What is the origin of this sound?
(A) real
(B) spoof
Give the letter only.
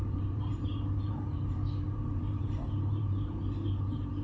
B